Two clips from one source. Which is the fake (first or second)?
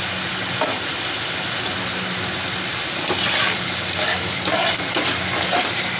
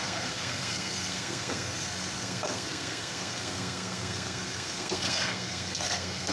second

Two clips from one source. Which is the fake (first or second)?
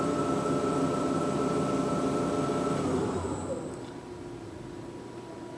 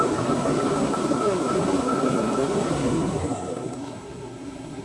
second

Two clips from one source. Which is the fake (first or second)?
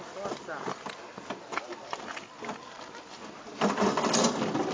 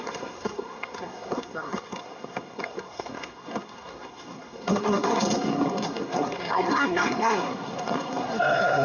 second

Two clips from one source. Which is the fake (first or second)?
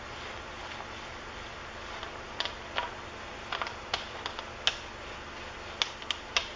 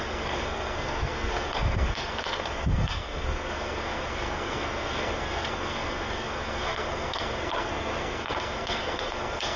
second